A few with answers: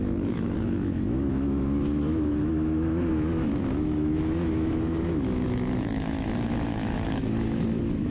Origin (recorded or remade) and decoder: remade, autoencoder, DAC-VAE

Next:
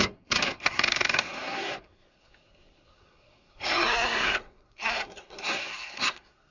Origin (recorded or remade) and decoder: remade, codec, SNAC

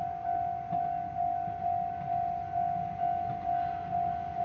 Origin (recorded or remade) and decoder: recorded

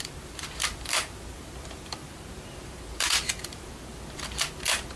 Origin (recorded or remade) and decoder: remade, vocoder, BigVGAN v2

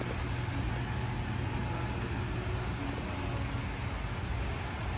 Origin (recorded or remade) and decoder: recorded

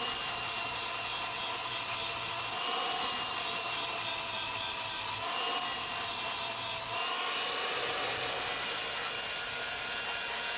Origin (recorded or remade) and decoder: remade, vocoder, BigVGAN v2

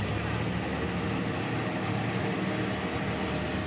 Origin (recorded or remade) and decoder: recorded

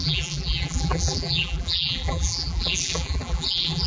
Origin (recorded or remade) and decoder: remade, vocoder, BigVGAN v2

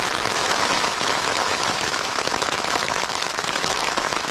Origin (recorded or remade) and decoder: remade, autoencoder, DAC-VAE